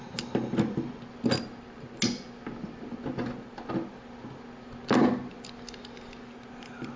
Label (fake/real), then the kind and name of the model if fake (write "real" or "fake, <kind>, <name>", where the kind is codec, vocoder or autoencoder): real